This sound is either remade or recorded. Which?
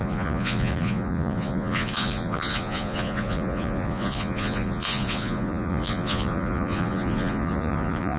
remade